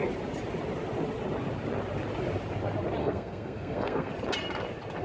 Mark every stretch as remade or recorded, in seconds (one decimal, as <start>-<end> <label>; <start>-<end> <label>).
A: 0.0-3.0 recorded; 3.0-4.1 remade; 4.1-5.0 recorded